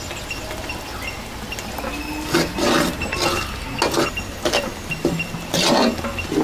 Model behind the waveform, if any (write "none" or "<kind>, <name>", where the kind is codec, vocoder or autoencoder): none